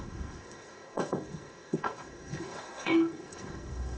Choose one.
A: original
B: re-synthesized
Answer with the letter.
B